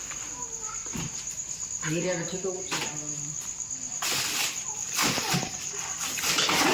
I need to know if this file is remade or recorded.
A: recorded